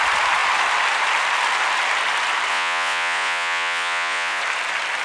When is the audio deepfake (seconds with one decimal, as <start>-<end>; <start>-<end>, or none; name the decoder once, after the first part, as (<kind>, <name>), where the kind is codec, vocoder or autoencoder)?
2.5-4.4 (vocoder, Vocos)